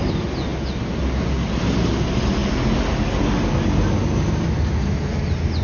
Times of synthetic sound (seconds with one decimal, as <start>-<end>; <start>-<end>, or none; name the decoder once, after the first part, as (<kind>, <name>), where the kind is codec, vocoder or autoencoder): none

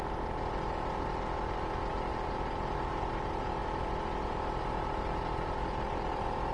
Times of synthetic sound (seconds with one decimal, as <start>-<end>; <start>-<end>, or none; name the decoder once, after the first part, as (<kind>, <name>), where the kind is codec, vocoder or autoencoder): none

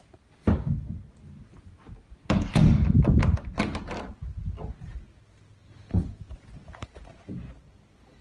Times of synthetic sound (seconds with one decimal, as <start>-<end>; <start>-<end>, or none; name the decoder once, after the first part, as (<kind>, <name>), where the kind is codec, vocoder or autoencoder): none